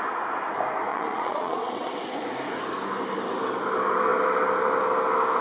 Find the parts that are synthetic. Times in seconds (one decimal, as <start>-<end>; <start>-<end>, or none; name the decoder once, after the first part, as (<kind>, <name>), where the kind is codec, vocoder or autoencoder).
0.9-1.9 (vocoder, Vocos)